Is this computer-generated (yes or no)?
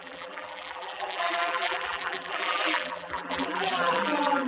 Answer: yes